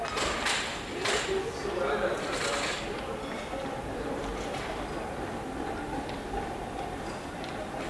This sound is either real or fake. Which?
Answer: real